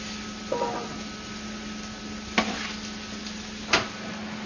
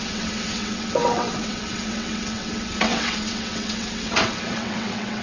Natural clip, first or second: first